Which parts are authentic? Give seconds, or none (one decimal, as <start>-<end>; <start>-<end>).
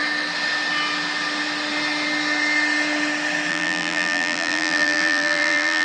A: 0.0-3.5